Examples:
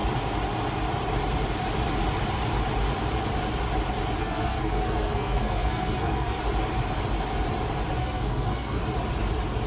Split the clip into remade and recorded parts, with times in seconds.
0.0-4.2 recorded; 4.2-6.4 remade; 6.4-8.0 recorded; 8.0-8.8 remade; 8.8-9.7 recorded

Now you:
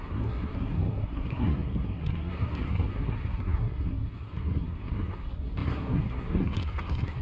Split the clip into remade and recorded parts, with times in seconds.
0.0-7.2 remade